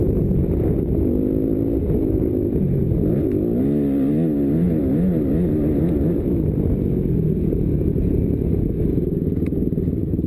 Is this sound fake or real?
real